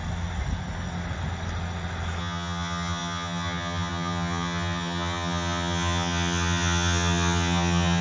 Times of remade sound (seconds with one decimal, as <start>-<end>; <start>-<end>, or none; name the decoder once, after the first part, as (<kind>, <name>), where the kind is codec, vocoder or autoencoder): 2.2-8.0 (vocoder, HiFi-GAN)